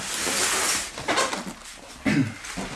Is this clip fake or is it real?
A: real